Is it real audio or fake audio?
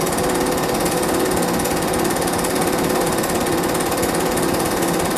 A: real